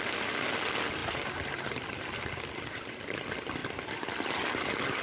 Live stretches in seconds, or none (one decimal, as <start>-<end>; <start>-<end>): 0.0-1.0; 1.8-5.0